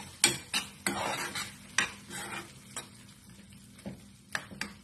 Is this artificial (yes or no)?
no